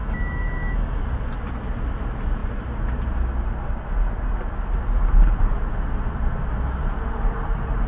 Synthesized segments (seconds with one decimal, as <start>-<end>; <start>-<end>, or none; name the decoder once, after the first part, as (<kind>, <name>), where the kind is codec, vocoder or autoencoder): 0.0-1.0 (autoencoder, DAC-VAE)